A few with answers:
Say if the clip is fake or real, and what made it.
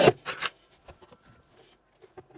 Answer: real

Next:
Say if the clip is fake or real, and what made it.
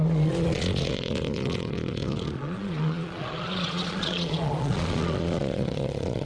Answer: fake, vocoder, Vocos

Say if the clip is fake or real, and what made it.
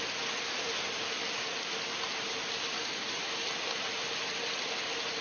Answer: real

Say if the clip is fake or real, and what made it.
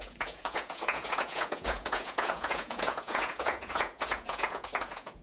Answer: fake, vocoder, Vocos